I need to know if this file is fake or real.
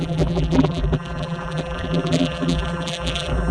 fake